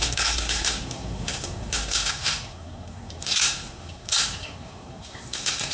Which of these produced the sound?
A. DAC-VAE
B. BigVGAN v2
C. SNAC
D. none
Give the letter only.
C